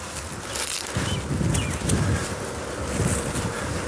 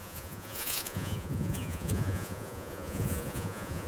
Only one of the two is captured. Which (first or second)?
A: first